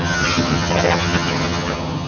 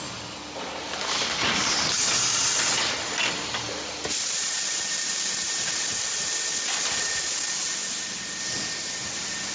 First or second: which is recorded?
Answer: second